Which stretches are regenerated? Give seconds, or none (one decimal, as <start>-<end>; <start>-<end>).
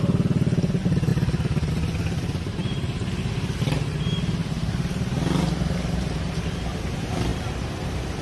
4.4-6.3